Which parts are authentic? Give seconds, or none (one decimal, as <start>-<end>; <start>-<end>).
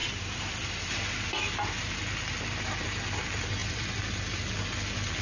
0.9-3.6; 4.2-5.2